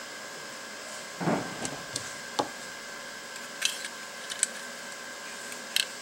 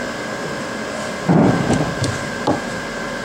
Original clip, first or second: first